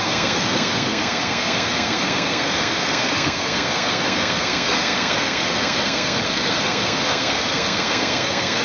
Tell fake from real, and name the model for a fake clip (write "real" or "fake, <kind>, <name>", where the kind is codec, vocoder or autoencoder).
fake, codec, SNAC